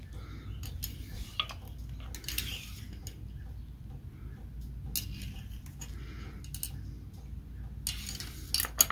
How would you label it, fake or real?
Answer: real